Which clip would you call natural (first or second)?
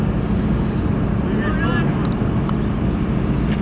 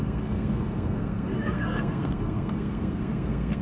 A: first